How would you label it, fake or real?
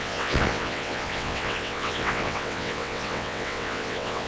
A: fake